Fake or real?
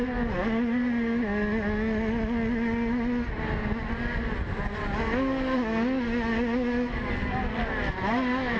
real